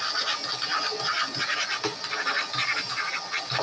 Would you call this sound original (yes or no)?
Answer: yes